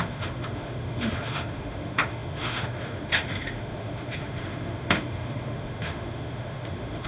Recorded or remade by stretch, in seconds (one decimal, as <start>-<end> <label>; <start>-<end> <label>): 0.0-7.1 remade